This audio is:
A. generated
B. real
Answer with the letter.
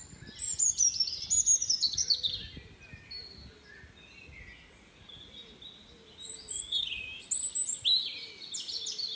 B